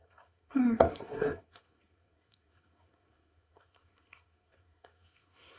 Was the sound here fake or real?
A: fake